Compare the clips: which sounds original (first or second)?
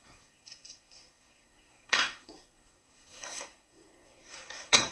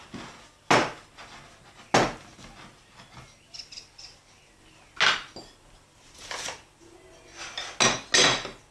second